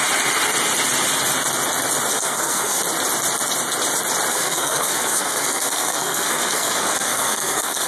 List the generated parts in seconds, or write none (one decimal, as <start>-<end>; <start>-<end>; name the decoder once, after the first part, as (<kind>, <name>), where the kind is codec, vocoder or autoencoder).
2.1-2.8 (codec, SNAC); 4.3-7.9